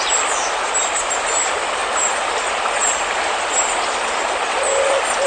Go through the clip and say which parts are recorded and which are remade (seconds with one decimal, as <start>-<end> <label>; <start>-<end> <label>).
0.0-5.3 recorded